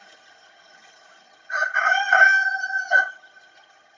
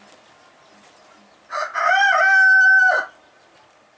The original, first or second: second